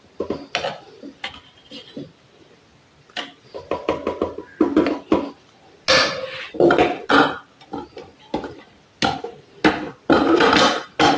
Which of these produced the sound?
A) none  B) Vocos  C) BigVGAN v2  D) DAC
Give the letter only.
A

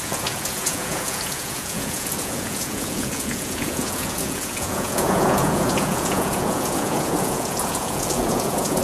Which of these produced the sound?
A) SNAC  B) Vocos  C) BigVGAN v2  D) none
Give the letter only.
B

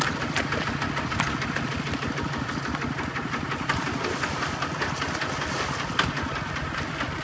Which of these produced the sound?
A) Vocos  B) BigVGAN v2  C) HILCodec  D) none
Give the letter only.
D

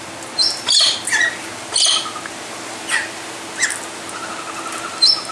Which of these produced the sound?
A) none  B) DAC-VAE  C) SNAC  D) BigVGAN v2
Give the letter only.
A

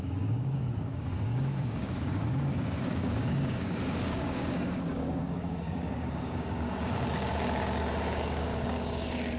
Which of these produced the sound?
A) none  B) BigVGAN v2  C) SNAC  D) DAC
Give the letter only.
D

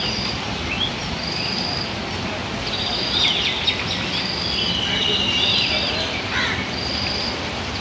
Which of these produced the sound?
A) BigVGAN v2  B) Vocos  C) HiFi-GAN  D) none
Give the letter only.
D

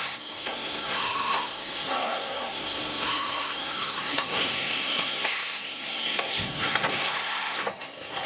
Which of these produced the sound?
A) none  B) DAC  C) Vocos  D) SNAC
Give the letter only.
D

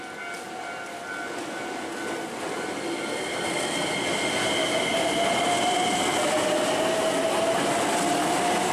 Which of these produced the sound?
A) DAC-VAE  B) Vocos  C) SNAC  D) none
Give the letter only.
D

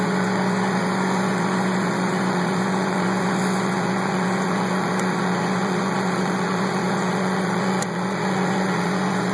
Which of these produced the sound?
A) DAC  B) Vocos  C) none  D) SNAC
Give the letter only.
B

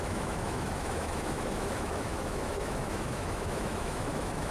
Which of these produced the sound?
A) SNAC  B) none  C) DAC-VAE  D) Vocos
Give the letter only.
C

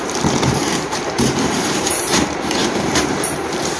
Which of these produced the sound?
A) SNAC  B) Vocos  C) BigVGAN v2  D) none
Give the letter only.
C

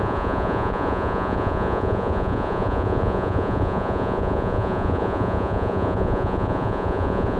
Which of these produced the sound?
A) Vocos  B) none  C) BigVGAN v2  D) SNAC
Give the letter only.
A